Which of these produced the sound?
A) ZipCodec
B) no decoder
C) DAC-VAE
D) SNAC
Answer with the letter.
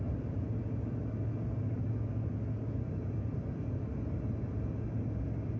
B